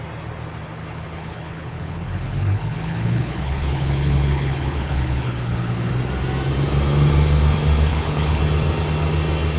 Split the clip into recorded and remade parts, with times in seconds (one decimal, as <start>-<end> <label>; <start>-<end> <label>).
0.0-0.8 recorded; 0.8-5.9 remade; 5.9-7.9 recorded; 7.9-8.4 remade; 8.4-9.6 recorded